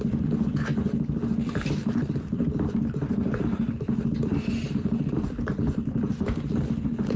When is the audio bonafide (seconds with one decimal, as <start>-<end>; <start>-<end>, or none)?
4.3-5.1